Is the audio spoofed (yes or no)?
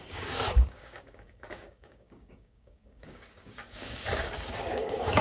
yes